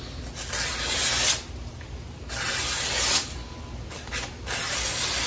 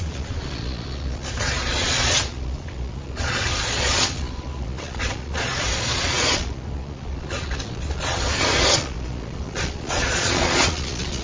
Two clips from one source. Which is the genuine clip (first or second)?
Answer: first